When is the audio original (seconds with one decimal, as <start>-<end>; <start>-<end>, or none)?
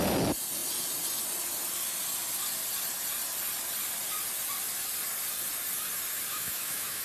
0.0-6.3